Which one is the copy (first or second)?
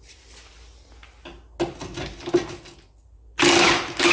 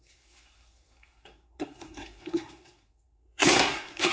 second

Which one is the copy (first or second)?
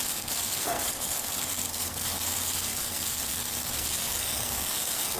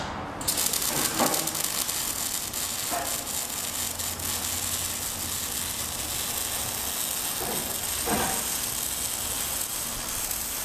first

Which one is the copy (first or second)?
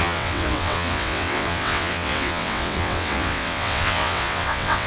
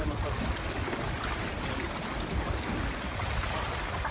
first